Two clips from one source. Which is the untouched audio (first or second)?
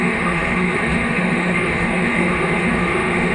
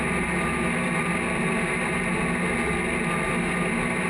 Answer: second